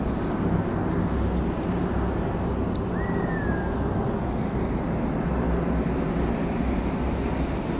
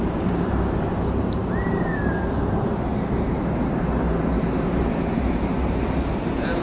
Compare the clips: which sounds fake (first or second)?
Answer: second